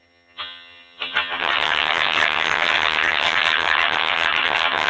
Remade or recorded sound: remade